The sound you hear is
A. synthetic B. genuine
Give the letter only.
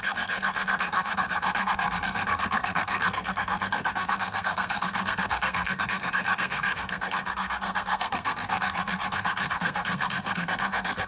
A